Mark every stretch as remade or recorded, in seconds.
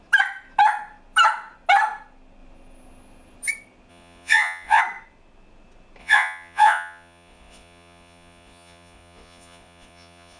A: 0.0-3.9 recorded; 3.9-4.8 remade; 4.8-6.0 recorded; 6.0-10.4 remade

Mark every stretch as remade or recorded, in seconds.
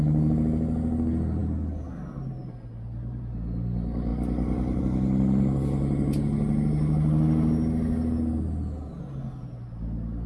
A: 0.0-10.3 recorded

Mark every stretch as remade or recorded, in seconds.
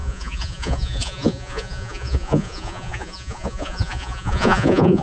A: 0.0-5.0 remade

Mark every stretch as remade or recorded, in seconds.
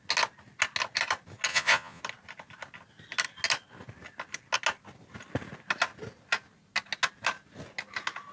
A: 0.0-1.5 recorded; 1.5-2.0 remade; 2.0-8.3 recorded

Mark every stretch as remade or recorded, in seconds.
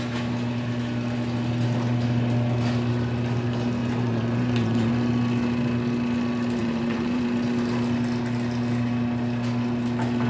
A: 0.0-3.8 recorded; 3.8-4.9 remade; 4.9-6.6 recorded; 6.6-7.2 remade; 7.2-10.3 recorded